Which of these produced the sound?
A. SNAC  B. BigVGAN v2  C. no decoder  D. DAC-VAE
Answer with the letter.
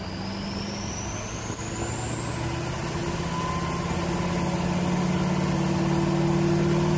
C